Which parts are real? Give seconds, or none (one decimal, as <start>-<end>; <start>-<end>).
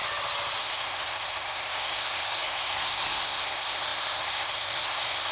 0.0-0.6